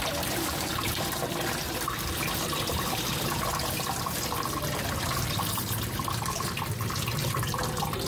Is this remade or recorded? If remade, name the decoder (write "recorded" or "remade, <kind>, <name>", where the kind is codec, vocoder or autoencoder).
remade, vocoder, BigVGAN v2